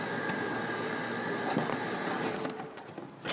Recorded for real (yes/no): yes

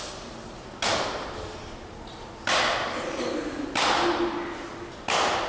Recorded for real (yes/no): yes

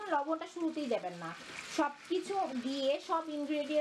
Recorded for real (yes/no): yes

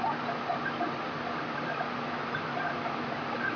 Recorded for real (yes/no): yes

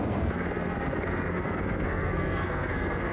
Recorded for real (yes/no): no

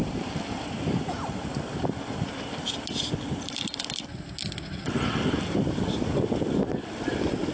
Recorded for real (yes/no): yes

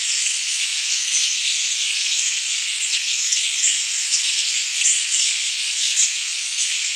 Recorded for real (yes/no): no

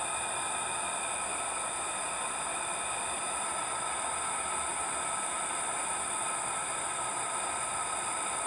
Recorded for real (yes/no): yes